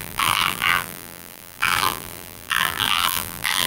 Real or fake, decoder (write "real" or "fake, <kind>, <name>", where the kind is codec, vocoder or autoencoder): fake, vocoder, BigVGAN v2